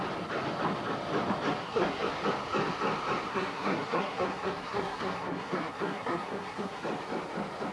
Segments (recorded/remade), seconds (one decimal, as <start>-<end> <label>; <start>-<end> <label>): 0.0-1.6 recorded; 1.6-2.1 remade; 2.1-3.3 recorded; 3.3-6.8 remade; 6.8-7.7 recorded